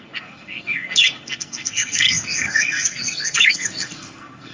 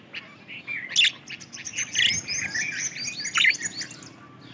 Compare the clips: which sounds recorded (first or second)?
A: second